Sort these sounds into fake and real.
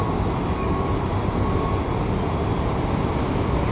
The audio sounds real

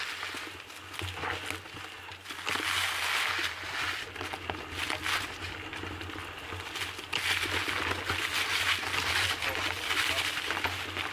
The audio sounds real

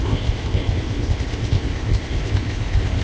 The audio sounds fake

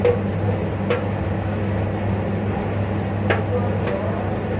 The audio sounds real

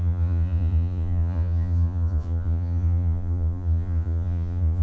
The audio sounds fake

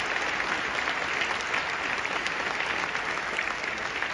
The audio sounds real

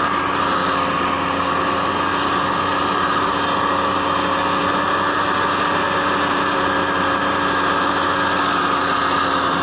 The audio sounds real